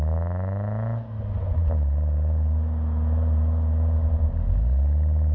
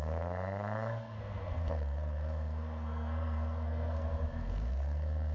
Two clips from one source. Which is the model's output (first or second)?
second